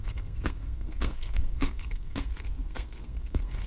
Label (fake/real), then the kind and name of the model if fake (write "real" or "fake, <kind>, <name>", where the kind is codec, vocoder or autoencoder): fake, codec, SNAC